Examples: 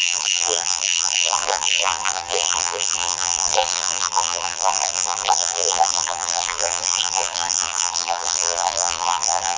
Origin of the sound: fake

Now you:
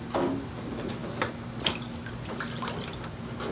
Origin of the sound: real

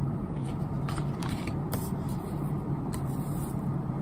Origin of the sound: fake